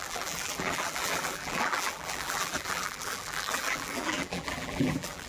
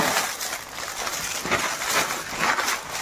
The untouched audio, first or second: second